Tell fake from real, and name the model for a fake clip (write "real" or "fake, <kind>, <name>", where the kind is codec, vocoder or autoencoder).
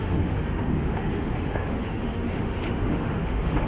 fake, autoencoder, DAC-VAE